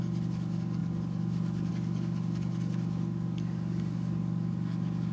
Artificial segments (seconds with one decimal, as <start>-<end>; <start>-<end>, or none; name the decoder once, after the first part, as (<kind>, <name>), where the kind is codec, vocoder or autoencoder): 0.0-5.1 (codec, DAC)